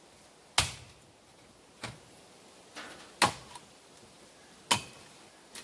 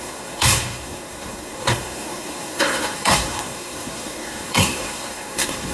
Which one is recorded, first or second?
first